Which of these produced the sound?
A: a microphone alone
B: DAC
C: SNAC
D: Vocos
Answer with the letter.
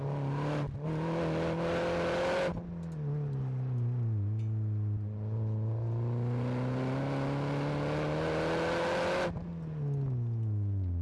A